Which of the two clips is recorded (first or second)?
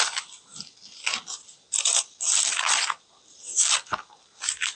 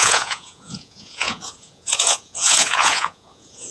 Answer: first